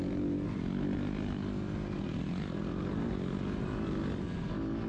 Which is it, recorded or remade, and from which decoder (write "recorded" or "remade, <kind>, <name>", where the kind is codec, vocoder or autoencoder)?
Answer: recorded